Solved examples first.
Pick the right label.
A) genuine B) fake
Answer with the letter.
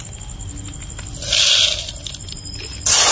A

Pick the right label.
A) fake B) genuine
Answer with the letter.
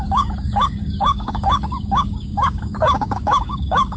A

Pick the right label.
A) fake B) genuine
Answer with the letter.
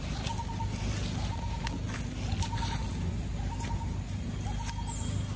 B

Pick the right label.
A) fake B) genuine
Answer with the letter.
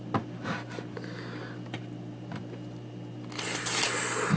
B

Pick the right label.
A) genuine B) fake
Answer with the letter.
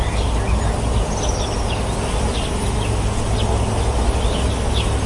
A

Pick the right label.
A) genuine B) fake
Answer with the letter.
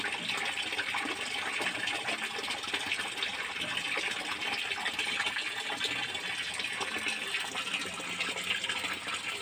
A